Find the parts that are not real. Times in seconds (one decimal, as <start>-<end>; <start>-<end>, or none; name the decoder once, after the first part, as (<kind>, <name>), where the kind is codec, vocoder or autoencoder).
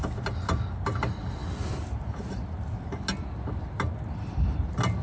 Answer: none